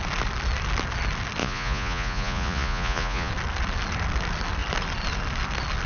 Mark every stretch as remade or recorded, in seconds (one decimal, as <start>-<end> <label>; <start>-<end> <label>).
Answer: 0.0-1.4 recorded; 1.4-3.3 remade; 3.3-5.9 recorded